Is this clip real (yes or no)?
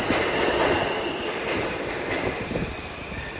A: yes